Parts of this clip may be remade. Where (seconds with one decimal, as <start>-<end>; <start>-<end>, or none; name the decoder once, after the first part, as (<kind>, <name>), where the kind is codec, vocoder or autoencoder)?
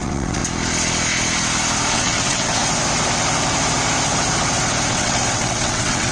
0.0-0.4 (vocoder, WaveNeXt); 1.9-2.6; 4.9-6.1